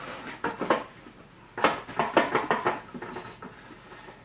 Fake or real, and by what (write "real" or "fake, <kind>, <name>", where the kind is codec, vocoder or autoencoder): real